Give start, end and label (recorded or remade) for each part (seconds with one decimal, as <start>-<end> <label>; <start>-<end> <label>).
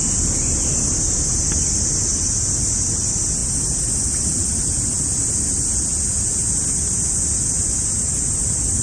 0.0-8.8 recorded